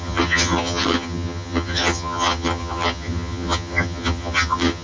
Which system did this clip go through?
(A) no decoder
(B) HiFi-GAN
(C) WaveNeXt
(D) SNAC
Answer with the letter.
B